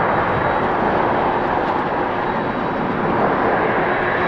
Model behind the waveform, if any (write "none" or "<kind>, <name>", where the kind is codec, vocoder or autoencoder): none